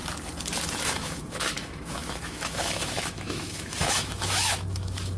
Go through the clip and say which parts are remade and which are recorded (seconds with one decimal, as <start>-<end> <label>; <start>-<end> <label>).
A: 0.0-0.8 recorded; 0.8-5.2 remade